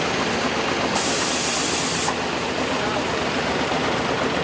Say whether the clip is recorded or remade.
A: recorded